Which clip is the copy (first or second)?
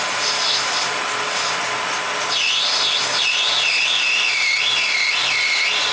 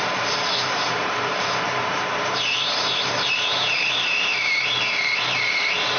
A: second